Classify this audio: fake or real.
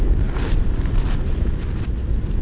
real